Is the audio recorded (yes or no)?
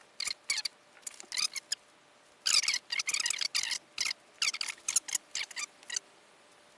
yes